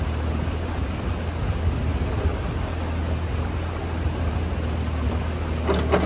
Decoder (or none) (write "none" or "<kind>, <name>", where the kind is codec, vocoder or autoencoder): none